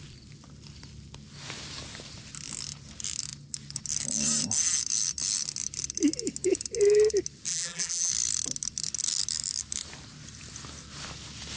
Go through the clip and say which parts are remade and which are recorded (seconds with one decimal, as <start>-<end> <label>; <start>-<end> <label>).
0.0-7.5 recorded; 7.5-8.1 remade; 8.1-11.6 recorded